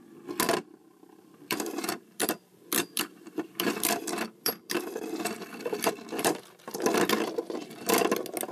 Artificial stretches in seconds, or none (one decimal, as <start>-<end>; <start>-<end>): 0.8-5.9